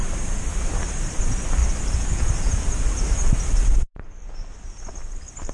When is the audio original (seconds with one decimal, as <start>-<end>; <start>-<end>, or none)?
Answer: 1.2-5.5